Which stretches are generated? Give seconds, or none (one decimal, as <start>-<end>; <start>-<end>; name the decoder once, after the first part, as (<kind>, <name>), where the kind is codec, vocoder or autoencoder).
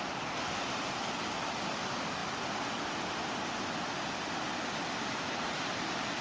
none